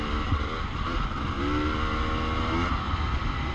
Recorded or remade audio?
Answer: recorded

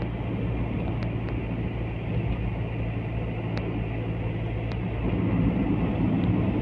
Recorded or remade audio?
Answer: recorded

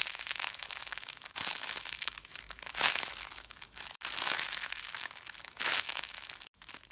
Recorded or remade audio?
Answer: remade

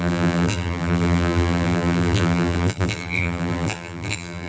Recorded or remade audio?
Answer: remade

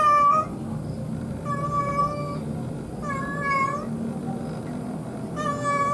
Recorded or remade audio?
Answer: recorded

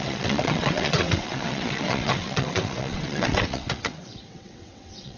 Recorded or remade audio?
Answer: remade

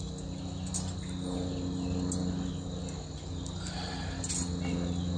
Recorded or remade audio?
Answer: recorded